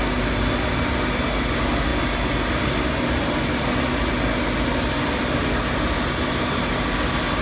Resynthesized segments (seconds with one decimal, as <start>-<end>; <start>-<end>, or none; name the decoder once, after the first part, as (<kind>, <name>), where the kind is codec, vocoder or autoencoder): none